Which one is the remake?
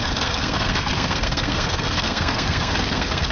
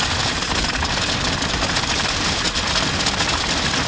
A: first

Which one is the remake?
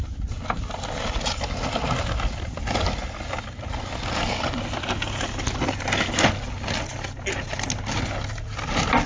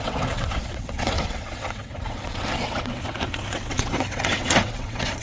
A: second